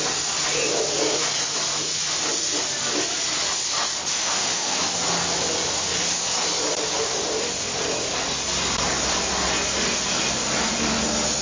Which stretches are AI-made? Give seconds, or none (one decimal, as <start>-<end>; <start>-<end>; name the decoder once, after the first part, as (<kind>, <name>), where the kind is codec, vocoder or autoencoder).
4.1-4.8 (autoencoder, DAC-VAE)